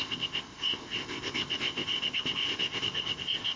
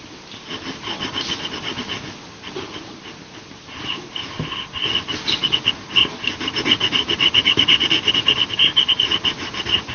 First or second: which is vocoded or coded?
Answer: first